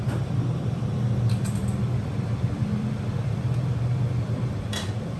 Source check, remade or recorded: remade